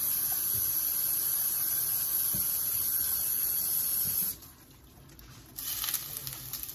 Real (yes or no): yes